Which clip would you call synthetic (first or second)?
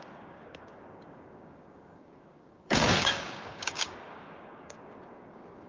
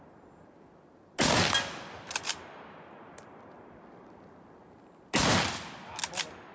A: first